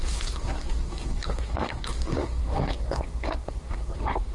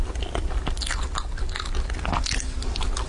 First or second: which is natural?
second